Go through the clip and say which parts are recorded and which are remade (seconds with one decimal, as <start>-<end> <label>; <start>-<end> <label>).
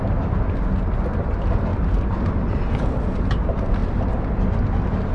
0.0-5.1 recorded